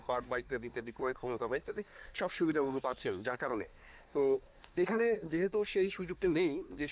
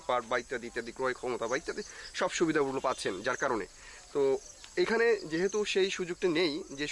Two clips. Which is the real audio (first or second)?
second